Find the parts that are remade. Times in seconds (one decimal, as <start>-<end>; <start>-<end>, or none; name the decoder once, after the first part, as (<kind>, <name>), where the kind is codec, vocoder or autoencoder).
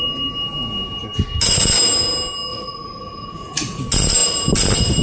2.5-3.8 (vocoder, Vocos)